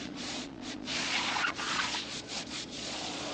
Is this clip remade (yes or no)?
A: yes